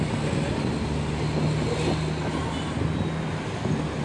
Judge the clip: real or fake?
real